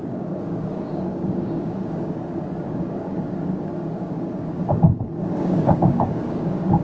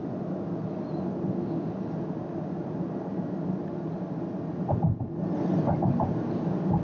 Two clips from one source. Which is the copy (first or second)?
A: first